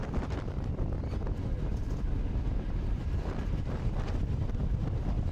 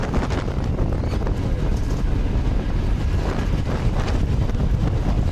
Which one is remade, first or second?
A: first